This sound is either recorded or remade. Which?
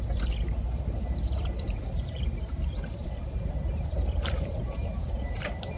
remade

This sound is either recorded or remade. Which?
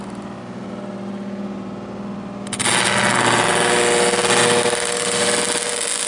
recorded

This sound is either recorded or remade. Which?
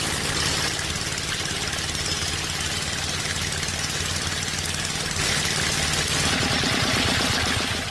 recorded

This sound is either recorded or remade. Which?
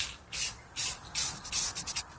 recorded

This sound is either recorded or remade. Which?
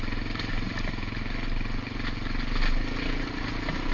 recorded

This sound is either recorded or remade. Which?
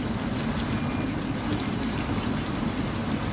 recorded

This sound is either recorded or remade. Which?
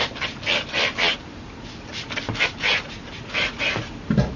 remade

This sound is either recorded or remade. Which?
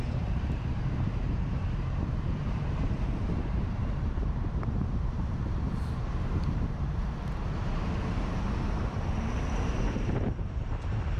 remade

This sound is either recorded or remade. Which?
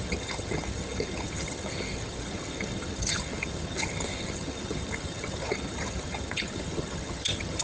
remade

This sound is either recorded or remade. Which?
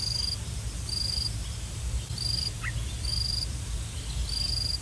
recorded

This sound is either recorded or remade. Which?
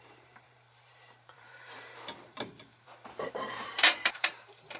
remade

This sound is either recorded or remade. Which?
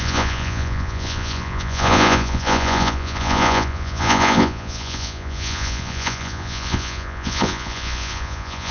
remade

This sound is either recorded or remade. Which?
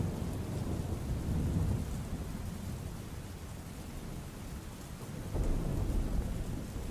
recorded